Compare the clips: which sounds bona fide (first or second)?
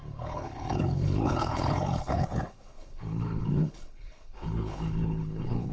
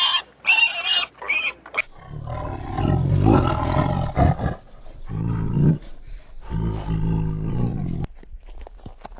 second